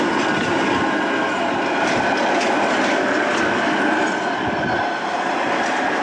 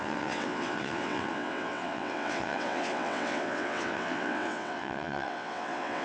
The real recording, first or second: first